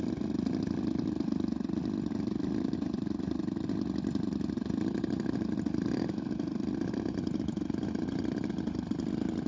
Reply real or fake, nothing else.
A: real